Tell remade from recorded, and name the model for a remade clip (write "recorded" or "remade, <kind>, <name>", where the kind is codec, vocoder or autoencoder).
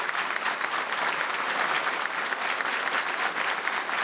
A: recorded